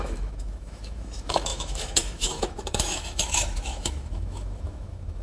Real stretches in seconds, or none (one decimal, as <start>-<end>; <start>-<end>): none